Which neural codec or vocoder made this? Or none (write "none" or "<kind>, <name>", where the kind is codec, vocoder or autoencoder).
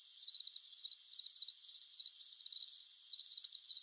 none